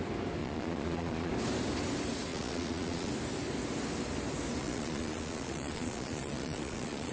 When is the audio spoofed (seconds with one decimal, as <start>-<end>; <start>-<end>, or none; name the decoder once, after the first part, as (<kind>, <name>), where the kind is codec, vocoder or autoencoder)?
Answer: 0.4-1.3 (vocoder, Vocos); 2.3-3.1; 4.6-7.1